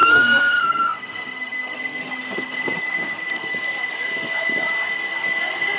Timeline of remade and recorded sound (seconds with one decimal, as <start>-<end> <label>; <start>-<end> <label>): 0.0-3.5 remade; 3.5-5.8 recorded